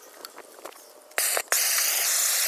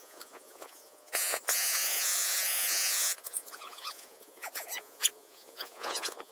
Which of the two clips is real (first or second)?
first